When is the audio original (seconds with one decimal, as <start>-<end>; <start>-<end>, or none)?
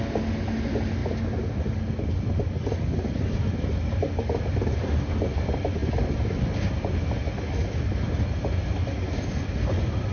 0.0-10.1